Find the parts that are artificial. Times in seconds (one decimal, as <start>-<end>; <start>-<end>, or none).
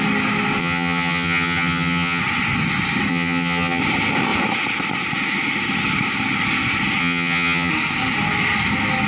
0.6-2.2; 3.1-3.8; 7.0-7.7